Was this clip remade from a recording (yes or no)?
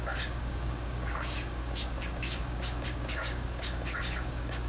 yes